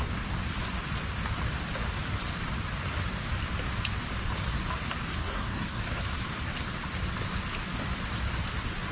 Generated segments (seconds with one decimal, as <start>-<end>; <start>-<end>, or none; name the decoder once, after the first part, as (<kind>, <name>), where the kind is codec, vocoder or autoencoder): 5.2-5.8 (codec, SNAC)